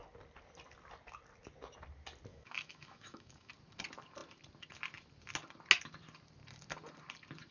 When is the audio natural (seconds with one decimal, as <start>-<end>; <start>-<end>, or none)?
0.0-2.3; 3.5-7.5